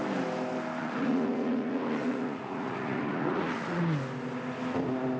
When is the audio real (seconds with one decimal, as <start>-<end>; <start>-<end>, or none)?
0.0-0.8; 3.8-5.2

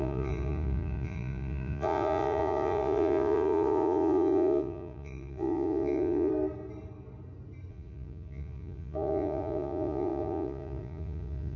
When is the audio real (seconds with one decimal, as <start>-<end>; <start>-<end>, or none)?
6.3-7.7

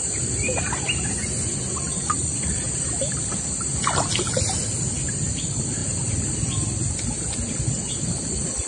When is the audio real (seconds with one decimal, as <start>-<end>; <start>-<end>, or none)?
0.0-1.2; 2.5-8.7

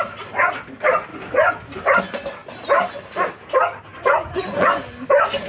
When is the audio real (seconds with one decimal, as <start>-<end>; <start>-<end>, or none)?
0.0-3.9; 4.8-5.5

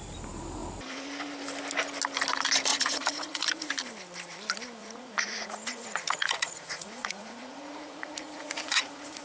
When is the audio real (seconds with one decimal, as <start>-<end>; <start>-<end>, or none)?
0.0-2.7; 3.7-4.8

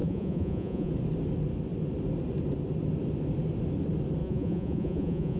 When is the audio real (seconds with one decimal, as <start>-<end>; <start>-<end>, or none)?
0.9-4.2

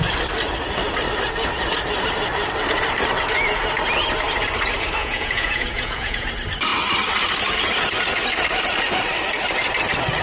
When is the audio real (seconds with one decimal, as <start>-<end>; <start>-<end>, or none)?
0.0-5.0; 6.3-10.2